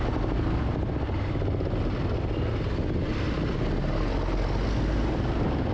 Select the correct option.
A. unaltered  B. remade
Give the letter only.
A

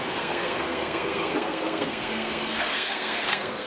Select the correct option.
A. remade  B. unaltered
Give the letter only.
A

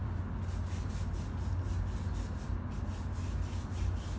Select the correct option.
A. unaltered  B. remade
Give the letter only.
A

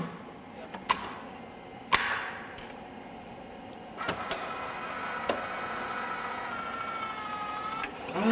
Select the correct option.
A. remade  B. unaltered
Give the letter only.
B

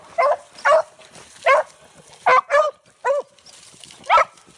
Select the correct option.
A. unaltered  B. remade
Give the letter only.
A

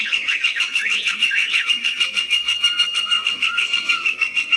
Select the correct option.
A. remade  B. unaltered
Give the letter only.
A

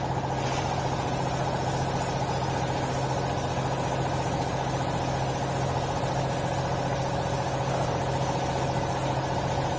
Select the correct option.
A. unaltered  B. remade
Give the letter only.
A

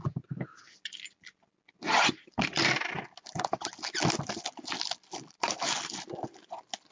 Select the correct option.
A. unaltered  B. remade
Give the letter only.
A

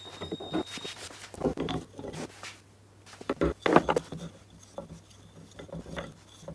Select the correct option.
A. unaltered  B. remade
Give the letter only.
A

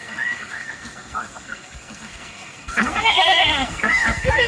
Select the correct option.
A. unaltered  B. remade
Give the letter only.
B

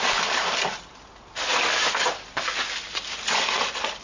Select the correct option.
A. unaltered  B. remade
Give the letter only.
A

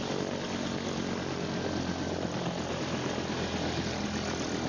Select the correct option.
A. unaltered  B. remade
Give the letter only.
A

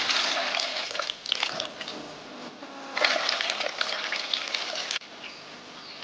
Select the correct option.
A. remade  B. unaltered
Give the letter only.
B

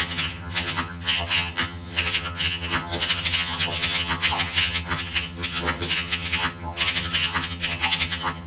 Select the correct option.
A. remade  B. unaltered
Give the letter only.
A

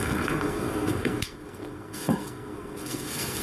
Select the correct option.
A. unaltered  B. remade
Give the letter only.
B